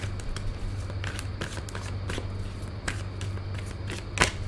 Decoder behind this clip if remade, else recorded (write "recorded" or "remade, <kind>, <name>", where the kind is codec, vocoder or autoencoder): recorded